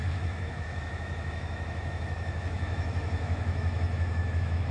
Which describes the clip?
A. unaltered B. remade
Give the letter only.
B